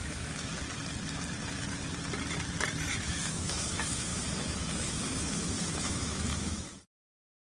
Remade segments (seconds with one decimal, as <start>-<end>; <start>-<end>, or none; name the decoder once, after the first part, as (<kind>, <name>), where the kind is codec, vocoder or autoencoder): 0.0-0.5 (autoencoder, DAC-VAE); 2.9-7.4